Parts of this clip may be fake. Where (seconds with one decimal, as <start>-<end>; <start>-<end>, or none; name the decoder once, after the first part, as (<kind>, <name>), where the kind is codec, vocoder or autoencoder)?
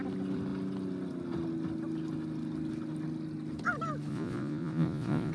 4.1-5.3 (vocoder, Vocos)